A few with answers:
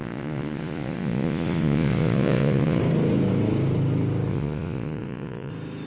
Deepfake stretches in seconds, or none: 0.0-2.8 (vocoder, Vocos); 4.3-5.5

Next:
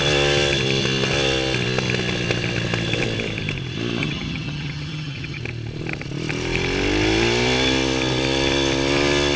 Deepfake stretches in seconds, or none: 4.0-5.4 (vocoder, HiFi-GAN)